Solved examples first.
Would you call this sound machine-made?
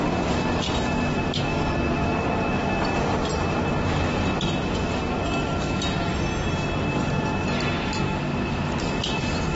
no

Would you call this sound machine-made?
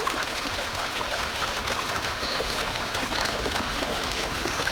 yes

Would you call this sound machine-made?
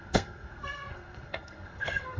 yes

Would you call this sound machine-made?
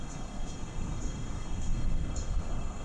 yes